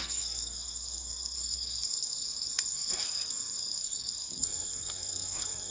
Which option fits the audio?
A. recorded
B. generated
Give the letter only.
B